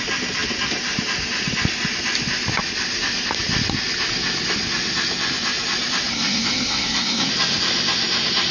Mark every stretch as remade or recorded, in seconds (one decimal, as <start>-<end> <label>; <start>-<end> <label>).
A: 0.0-6.1 recorded; 6.1-7.3 remade; 7.3-8.5 recorded